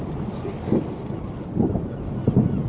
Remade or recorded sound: recorded